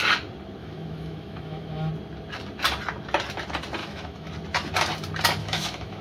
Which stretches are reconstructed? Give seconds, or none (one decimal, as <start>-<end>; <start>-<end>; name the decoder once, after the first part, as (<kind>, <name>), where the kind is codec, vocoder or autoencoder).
0.6-1.9 (autoencoder, DAC-VAE); 3.8-4.3; 5.4-6.0